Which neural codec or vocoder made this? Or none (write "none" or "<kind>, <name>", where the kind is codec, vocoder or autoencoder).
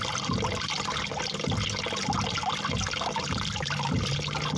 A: none